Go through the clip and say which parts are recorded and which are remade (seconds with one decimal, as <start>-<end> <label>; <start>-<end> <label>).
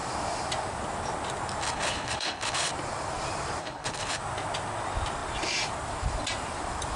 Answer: 0.0-1.6 recorded; 1.6-2.7 remade; 2.7-3.6 recorded; 3.6-4.2 remade; 4.2-7.0 recorded